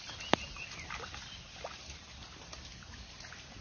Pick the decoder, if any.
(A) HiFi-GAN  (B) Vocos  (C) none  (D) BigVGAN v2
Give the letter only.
C